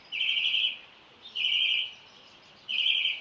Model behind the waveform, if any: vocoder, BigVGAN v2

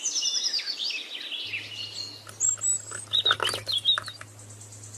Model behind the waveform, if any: none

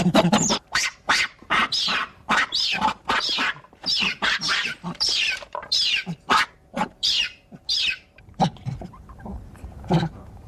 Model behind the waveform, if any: vocoder, BigVGAN v2